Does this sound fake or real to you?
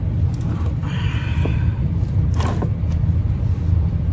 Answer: fake